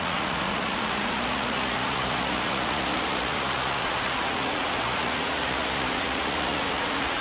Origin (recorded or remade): remade